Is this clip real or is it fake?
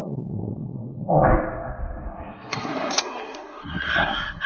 fake